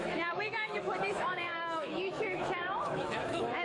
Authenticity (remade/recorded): remade